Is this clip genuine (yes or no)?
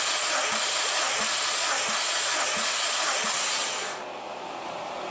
yes